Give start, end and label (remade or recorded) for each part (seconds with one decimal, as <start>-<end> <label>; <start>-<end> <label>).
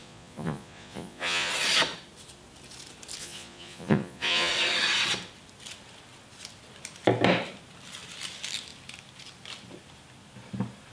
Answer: 0.0-1.5 remade; 1.5-3.2 recorded; 3.2-4.5 remade; 4.5-10.9 recorded